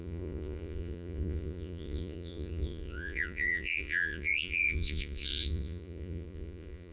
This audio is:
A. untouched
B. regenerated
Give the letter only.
B